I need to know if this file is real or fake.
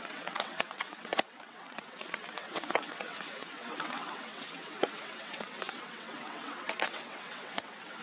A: fake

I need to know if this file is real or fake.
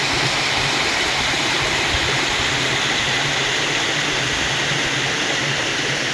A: real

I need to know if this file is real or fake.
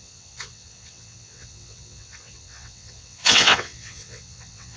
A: fake